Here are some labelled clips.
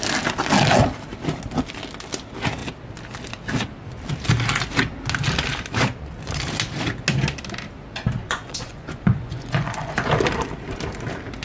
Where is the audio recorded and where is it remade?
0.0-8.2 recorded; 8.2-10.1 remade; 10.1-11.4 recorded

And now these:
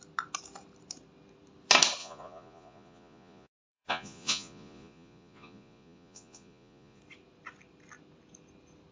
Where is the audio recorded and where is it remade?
0.0-2.0 recorded; 2.0-7.0 remade; 7.0-8.9 recorded